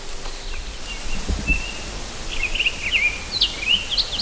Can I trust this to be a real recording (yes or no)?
yes